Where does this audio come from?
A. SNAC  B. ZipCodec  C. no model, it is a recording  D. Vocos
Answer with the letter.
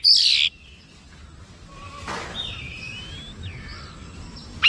C